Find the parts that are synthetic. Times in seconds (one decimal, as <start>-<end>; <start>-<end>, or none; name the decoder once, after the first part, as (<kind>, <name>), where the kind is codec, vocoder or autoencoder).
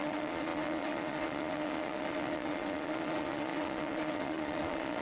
0.0-5.0 (vocoder, Vocos)